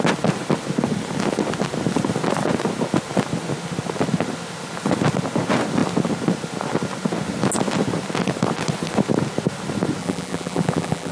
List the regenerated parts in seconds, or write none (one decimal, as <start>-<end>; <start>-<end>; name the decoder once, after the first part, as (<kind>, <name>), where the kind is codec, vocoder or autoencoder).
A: 10.0-11.1 (vocoder, BigVGAN v2)